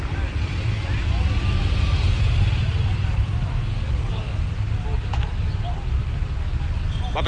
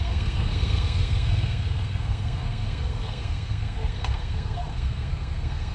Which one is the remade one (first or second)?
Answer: second